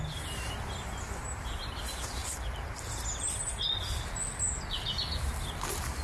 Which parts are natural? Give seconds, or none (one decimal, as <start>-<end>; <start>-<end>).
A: 0.0-6.0